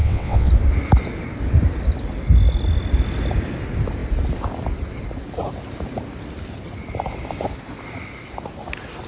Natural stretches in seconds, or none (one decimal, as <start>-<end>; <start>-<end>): 0.5-9.1